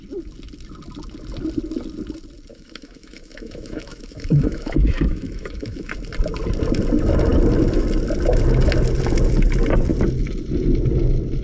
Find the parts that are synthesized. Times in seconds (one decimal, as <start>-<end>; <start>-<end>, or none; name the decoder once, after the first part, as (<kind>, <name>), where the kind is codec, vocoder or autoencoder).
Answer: 2.5-5.9 (autoencoder, DAC-VAE)